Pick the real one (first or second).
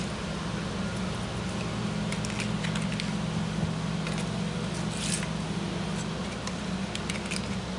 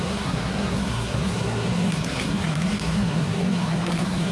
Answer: first